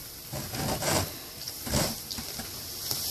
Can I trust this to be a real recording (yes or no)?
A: yes